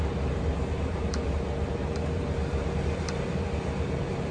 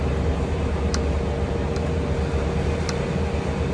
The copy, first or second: first